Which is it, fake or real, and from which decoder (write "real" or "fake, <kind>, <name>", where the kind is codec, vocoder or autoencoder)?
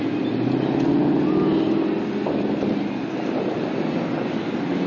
real